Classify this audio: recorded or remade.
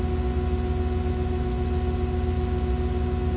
recorded